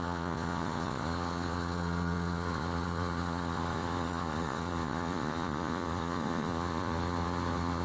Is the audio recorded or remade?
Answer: remade